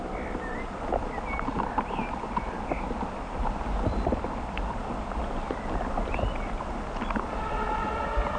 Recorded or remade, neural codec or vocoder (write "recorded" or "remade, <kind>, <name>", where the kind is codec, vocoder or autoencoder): recorded